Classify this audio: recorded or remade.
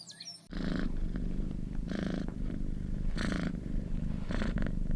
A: remade